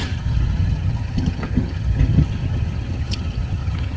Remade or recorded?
remade